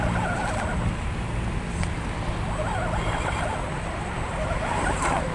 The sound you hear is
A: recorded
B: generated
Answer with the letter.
A